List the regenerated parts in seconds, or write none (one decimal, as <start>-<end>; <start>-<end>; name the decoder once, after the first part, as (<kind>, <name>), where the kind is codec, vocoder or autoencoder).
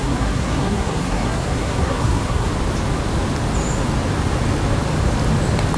0.0-2.5 (codec, SNAC)